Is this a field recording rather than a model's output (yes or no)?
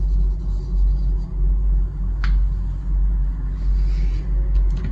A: yes